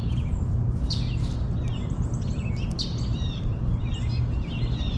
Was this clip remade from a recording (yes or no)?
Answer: no